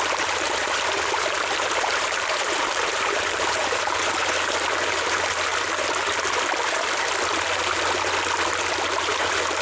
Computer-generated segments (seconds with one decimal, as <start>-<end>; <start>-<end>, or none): 0.0-5.5; 9.0-9.6